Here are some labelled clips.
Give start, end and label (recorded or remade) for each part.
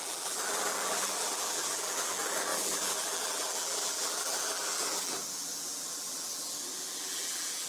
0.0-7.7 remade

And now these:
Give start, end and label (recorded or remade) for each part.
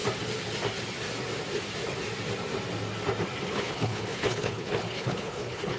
0.0-3.5 recorded; 3.5-5.8 remade